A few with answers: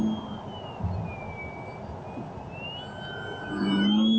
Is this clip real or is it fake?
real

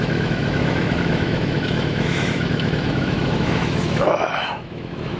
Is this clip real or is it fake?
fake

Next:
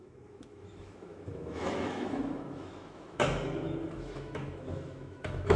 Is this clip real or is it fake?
fake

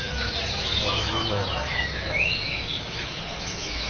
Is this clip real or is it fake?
fake